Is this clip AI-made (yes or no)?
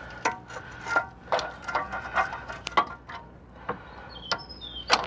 no